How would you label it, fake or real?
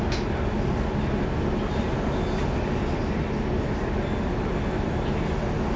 real